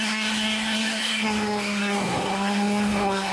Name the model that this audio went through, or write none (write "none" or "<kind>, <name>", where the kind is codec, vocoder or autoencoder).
codec, SNAC